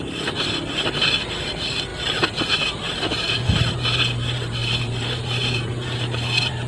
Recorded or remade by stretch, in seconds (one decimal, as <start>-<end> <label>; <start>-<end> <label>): 0.0-6.7 remade